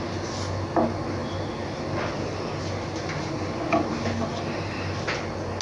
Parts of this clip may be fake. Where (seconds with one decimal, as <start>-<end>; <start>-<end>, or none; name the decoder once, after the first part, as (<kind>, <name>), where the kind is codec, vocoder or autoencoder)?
none